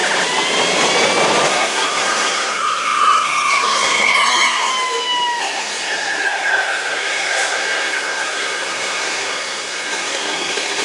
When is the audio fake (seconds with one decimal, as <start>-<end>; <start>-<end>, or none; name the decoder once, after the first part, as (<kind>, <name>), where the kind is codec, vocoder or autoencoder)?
1.5-4.7 (codec, SNAC); 5.4-10.8